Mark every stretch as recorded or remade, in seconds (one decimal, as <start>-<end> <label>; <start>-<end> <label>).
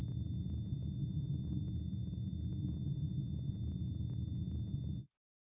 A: 0.0-5.5 recorded